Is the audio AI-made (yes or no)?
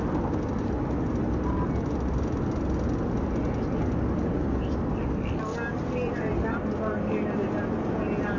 no